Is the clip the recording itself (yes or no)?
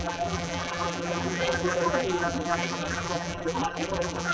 no